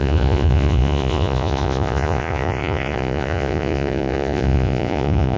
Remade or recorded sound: remade